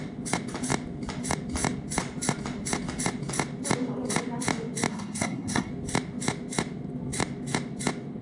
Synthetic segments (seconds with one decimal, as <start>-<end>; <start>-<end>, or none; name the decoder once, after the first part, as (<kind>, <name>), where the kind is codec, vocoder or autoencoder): 4.9-5.7 (codec, SNAC)